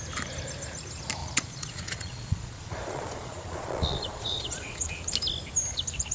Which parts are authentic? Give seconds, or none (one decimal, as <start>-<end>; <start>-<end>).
0.0-1.2; 4.9-6.1